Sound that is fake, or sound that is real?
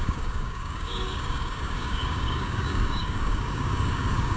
fake